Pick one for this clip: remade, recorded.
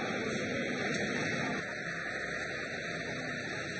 recorded